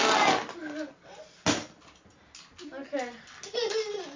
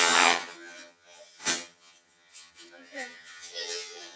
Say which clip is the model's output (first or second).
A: second